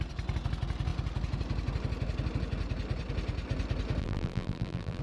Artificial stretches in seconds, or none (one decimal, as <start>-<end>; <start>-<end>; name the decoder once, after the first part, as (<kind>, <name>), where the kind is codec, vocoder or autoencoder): 4.0-5.0 (vocoder, BigVGAN v2)